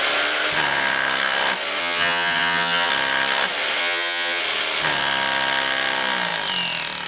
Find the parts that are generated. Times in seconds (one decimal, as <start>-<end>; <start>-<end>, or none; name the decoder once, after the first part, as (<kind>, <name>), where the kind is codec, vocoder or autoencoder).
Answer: 1.8-2.9 (vocoder, HiFi-GAN); 3.8-4.4